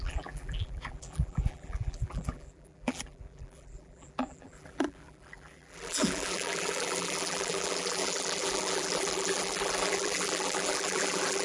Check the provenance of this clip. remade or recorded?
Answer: remade